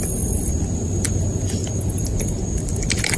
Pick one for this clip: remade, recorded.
recorded